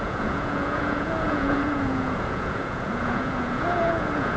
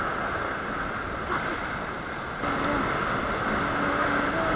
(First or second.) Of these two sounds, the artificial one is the first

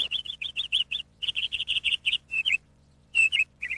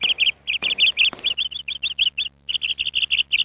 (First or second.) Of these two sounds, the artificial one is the first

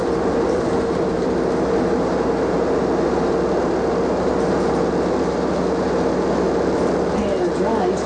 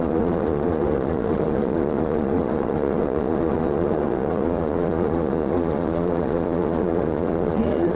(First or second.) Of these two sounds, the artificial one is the second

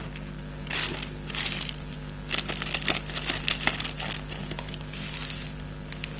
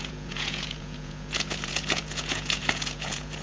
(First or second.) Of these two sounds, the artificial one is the second